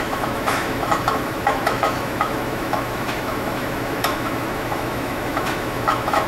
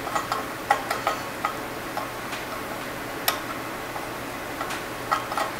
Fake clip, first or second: first